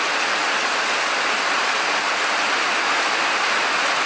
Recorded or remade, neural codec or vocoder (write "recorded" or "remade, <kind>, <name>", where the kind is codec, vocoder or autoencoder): recorded